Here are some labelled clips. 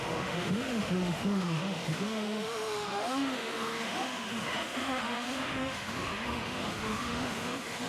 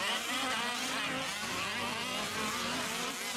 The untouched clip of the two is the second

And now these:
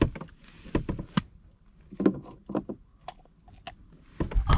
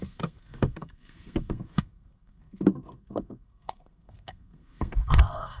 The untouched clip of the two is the first